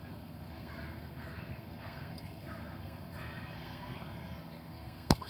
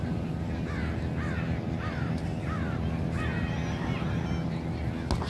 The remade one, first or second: first